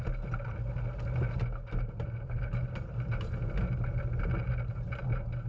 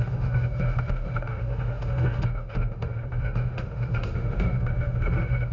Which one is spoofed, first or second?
second